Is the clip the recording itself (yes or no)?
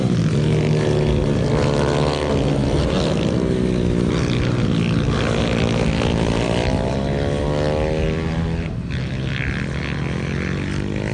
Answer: yes